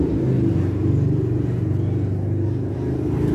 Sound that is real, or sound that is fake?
real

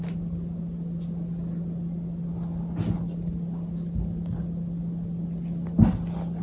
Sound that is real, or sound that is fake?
real